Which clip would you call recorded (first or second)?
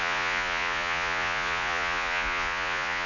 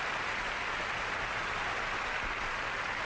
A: second